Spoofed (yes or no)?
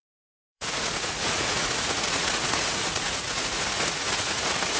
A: yes